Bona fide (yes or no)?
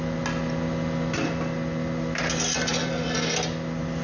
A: yes